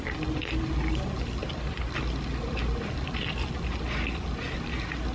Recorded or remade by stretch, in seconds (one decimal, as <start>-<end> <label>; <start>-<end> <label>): 0.0-5.1 recorded